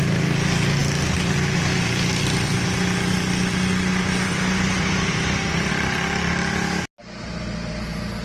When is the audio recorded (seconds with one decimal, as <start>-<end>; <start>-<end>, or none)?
0.0-8.2